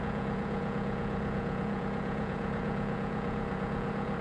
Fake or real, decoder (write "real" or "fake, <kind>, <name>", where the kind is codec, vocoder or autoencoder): fake, vocoder, Vocos